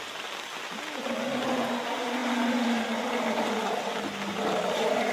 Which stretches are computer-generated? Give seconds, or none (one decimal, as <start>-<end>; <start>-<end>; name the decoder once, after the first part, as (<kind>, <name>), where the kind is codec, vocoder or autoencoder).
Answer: none